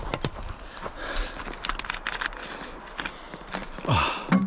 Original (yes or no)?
yes